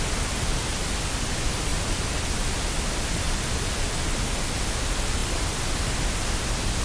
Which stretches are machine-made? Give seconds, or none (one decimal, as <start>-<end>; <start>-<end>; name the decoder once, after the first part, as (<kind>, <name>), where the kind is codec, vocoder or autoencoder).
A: 5.2-5.8 (vocoder, BigVGAN v2)